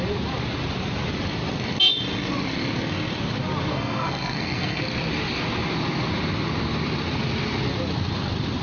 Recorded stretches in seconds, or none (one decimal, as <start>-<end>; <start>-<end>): 0.0-3.7; 4.8-8.6